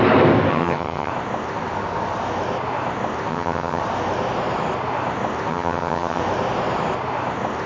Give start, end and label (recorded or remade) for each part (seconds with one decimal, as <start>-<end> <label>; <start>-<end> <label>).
0.0-0.5 recorded; 0.5-1.1 remade; 1.1-3.3 recorded; 3.3-3.8 remade; 3.8-5.5 recorded; 5.5-6.2 remade; 6.2-7.7 recorded